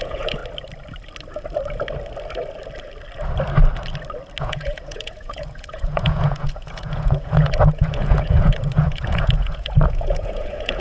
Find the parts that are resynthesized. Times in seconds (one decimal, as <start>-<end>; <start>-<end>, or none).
0.0-0.4; 4.4-10.8